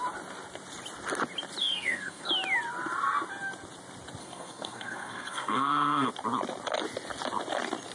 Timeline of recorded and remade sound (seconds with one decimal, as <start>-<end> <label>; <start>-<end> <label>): 0.0-1.6 recorded; 1.6-2.3 remade; 2.3-4.2 recorded; 4.2-6.1 remade; 6.1-7.9 recorded